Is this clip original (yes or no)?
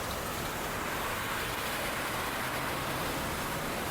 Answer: yes